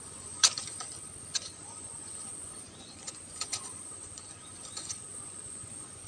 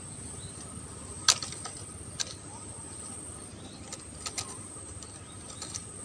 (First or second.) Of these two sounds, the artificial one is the first